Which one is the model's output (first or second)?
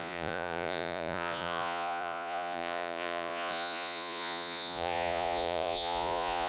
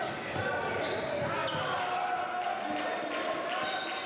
first